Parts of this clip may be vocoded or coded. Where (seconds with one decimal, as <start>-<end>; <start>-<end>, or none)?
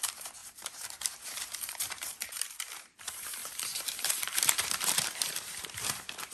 0.0-6.3